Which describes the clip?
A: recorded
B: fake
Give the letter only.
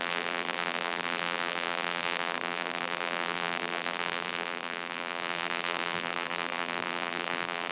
B